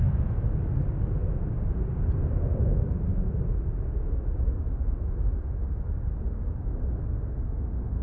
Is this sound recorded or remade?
recorded